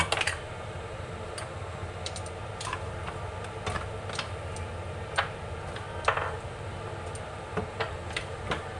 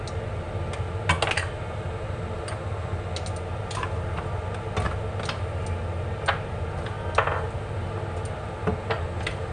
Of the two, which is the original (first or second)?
second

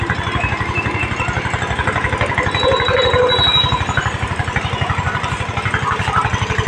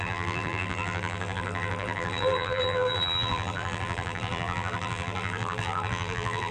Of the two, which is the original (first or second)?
first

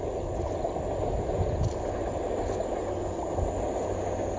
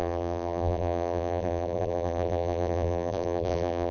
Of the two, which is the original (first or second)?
first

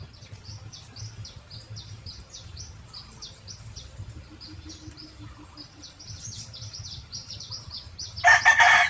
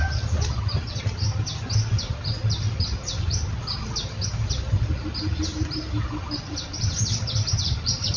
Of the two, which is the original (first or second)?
second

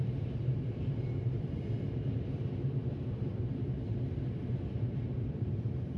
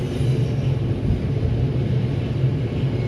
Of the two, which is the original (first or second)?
second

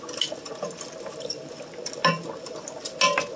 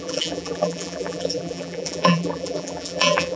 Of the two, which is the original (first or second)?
first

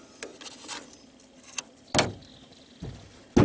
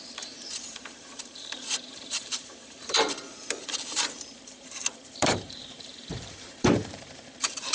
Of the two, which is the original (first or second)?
first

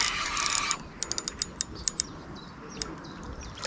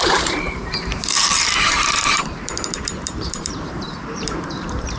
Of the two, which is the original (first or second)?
first